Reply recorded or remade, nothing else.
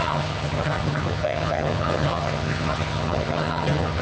remade